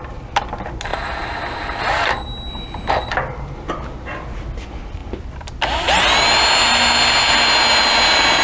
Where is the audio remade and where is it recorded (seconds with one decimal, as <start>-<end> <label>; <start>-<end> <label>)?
0.0-8.4 recorded